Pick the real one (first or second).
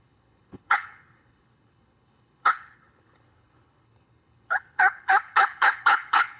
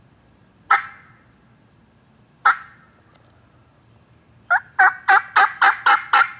second